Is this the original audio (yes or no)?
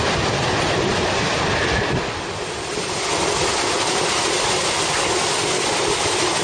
yes